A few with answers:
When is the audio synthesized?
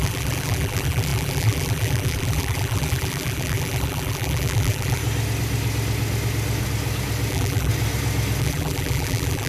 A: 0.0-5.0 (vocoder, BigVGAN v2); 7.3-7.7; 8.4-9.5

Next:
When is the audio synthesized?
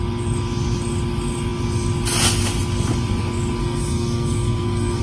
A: 3.6-5.0 (codec, SNAC)